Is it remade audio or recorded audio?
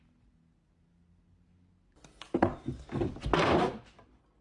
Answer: recorded